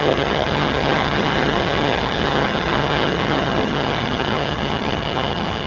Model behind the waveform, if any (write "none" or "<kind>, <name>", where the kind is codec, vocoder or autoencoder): vocoder, HiFi-GAN